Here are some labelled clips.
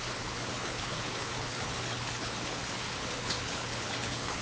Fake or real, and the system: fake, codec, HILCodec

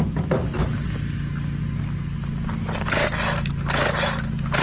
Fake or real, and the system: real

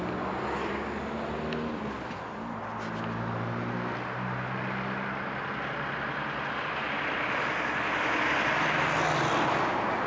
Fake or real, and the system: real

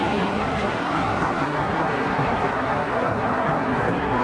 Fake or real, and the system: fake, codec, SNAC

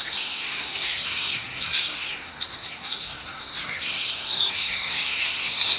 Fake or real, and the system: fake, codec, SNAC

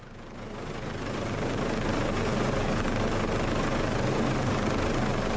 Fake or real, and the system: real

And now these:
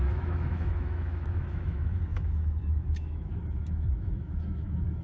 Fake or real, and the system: fake, autoencoder, DAC-VAE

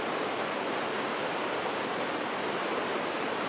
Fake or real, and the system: real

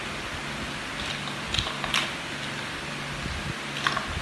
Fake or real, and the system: real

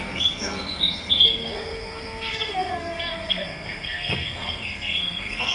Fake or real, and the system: fake, codec, SNAC